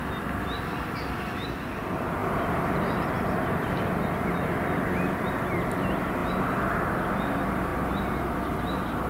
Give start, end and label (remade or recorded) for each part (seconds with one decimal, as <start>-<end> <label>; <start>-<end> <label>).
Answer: 0.0-2.2 recorded; 2.2-3.9 remade; 3.9-6.2 recorded; 6.2-6.8 remade; 6.8-9.1 recorded